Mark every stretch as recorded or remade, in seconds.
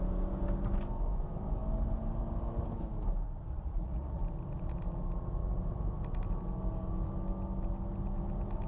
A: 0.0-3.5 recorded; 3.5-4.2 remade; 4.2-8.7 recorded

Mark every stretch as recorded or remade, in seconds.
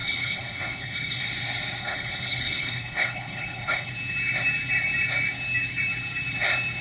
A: 0.0-1.2 remade; 1.2-1.8 recorded; 1.8-3.9 remade; 3.9-6.8 recorded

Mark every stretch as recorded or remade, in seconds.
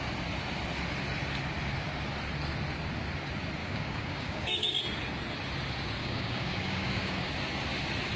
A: 0.0-3.6 recorded; 3.6-4.8 remade; 4.8-6.0 recorded; 6.0-7.3 remade; 7.3-8.2 recorded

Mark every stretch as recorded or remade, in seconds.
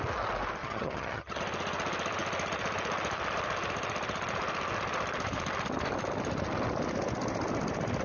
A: 0.0-0.6 recorded; 0.6-1.4 remade; 1.4-8.0 recorded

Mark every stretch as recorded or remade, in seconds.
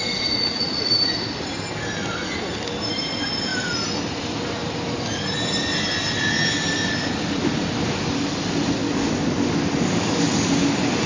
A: 0.0-11.1 recorded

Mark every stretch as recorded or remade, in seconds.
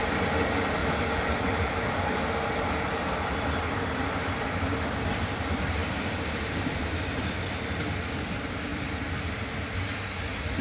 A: 0.0-0.8 recorded; 0.8-2.3 remade; 2.3-5.8 recorded; 5.8-7.6 remade; 7.6-8.7 recorded; 8.7-9.6 remade; 9.6-10.6 recorded